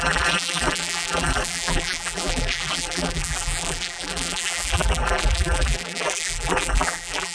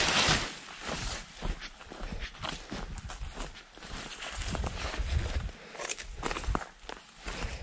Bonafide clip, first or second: second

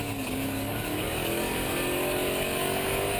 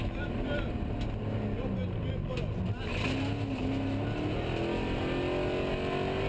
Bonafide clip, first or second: second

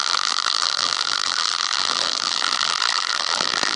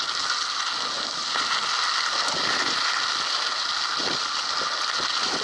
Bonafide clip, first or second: second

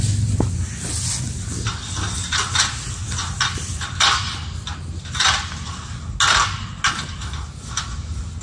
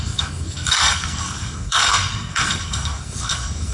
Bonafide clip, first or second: first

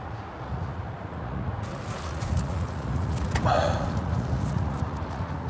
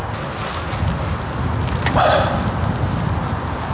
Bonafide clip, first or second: second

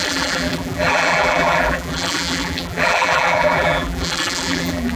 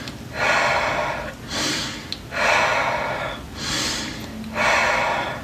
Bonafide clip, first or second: second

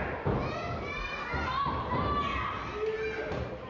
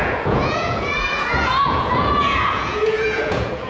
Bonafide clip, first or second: first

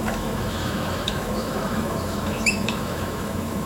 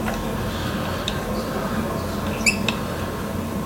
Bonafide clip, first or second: second